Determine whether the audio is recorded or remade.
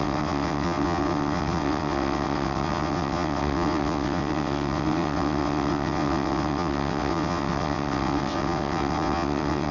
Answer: remade